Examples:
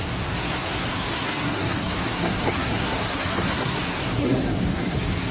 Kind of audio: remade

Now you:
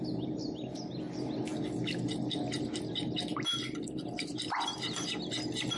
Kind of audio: recorded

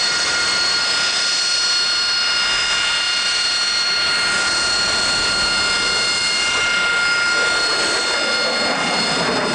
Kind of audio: recorded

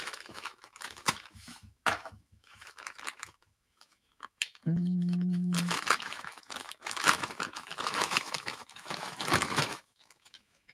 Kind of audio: remade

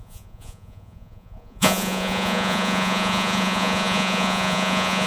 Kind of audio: remade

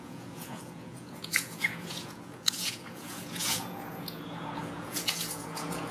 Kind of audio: remade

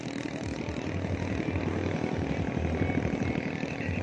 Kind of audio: recorded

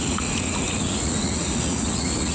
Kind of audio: remade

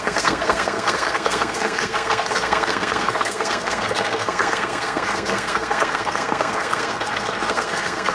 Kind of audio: remade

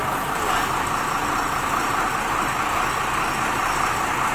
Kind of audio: recorded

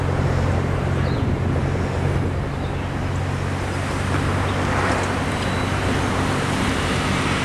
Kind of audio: recorded